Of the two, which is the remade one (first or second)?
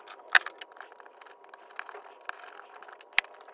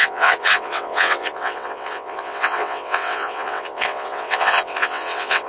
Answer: second